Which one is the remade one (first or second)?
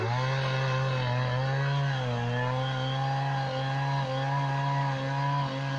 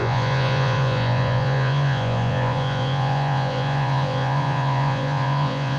second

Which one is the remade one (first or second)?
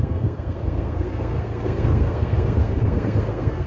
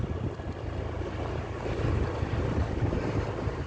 first